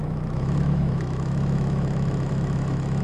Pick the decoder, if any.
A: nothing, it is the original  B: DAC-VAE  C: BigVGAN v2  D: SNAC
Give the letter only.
B